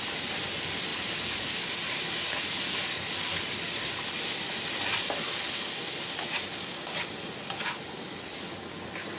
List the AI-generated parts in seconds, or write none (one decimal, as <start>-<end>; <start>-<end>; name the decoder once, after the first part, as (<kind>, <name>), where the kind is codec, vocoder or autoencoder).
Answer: none